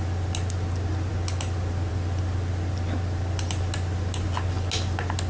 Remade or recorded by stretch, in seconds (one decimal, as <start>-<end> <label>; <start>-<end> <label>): 0.0-5.3 recorded